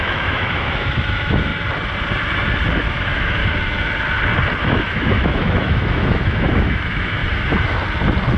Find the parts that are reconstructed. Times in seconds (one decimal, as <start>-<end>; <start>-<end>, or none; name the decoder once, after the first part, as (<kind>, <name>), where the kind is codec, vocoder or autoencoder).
0.0-1.5 (autoencoder, DAC-VAE); 2.9-3.4; 4.6-7.2